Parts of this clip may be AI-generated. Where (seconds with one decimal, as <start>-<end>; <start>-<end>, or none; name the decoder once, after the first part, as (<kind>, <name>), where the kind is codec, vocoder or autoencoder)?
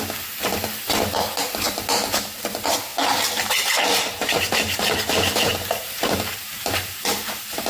2.9-7.7 (vocoder, BigVGAN v2)